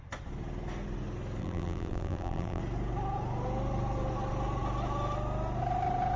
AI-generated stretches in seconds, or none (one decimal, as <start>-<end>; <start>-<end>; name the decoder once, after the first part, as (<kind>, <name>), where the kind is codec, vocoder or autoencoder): 1.4-2.6 (vocoder, BigVGAN v2)